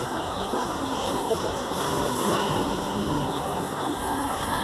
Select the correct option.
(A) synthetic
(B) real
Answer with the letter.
A